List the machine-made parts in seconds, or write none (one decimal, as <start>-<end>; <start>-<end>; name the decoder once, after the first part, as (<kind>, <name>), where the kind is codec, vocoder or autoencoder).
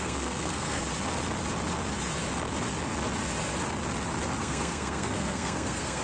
0.0-0.8 (codec, SNAC); 4.4-6.0